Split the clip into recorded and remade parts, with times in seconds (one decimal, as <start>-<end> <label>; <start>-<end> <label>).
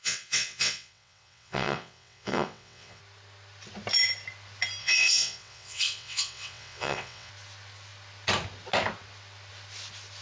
0.0-3.0 remade; 3.0-4.8 recorded; 4.8-7.3 remade; 7.3-10.2 recorded